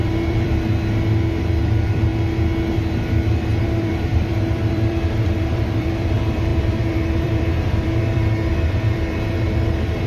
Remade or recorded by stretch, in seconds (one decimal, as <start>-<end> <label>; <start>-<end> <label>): 0.0-0.5 remade; 0.5-1.6 recorded; 1.6-2.1 remade; 2.1-3.6 recorded; 3.6-10.1 remade